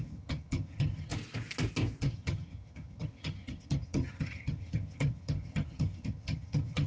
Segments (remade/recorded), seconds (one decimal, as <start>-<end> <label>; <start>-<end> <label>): 0.0-1.1 remade; 1.1-2.0 recorded; 2.0-6.9 remade